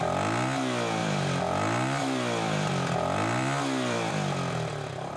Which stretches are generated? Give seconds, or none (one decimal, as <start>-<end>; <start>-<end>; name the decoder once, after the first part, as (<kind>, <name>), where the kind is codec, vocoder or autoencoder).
1.0-4.1 (vocoder, BigVGAN v2)